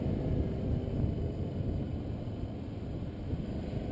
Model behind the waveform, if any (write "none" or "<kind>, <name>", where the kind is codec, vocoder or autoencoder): none